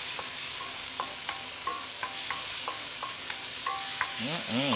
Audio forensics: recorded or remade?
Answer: remade